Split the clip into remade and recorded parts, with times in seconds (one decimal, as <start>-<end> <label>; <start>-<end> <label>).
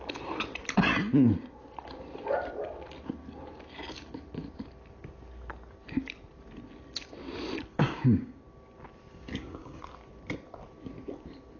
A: 0.0-7.7 recorded; 7.7-8.4 remade; 8.4-9.1 recorded; 9.1-9.8 remade; 9.8-11.6 recorded